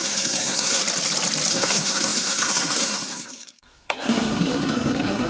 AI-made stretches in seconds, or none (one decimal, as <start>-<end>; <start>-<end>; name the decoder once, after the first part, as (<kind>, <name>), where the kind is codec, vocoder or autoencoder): 0.0-0.8 (codec, SNAC); 1.5-5.3